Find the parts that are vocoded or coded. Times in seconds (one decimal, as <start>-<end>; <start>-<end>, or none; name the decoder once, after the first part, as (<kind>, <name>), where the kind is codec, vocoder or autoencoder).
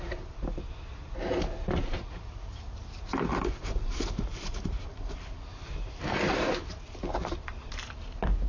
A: 0.0-6.0 (vocoder, BigVGAN v2); 7.0-8.5